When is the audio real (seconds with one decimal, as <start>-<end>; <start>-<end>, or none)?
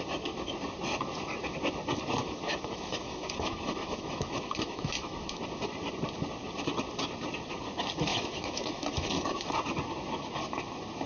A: 0.0-2.2; 5.4-8.1; 9.5-11.1